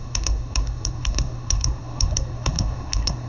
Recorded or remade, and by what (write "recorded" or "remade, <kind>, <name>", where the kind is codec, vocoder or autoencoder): remade, codec, SNAC